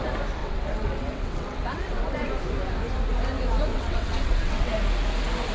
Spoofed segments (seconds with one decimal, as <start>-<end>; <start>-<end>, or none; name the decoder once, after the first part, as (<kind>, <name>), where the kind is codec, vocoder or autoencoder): 0.4-2.3 (vocoder, WaveNeXt); 3.7-4.7